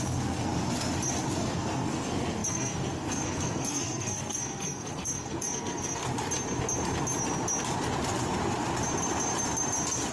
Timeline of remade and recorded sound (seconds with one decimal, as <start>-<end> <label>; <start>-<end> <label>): 0.0-0.5 remade; 0.5-1.4 recorded; 1.4-6.0 remade; 6.0-10.1 recorded